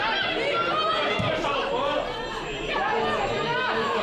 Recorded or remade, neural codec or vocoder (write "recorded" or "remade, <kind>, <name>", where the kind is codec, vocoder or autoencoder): recorded